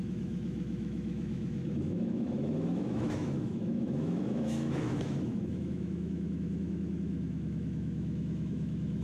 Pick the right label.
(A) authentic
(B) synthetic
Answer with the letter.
B